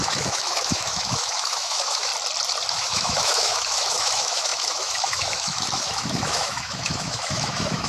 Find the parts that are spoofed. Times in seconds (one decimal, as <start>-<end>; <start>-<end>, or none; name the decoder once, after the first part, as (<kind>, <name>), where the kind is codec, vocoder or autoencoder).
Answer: 0.0-2.1 (autoencoder, DAC-VAE); 2.7-7.9